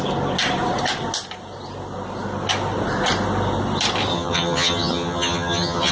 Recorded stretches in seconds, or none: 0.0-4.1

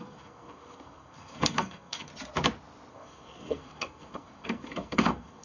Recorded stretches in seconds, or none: 2.1-2.9

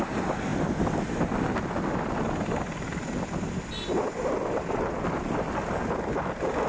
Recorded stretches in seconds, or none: 0.0-6.7

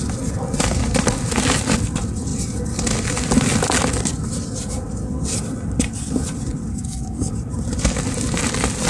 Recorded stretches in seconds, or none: 0.0-6.7; 7.3-8.9